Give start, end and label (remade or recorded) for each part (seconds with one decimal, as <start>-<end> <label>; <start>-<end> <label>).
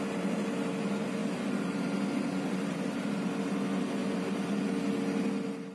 0.0-5.7 recorded